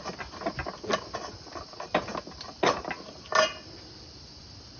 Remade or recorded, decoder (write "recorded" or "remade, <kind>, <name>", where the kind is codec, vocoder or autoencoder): recorded